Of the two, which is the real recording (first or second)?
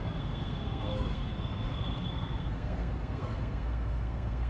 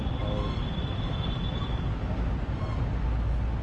second